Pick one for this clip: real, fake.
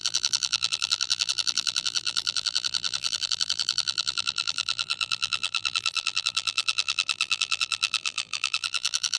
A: fake